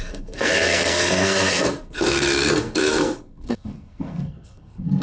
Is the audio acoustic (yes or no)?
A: no